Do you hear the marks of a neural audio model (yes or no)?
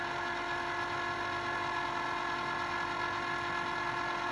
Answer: no